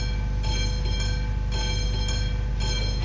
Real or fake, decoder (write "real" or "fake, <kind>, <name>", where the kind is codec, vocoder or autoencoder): real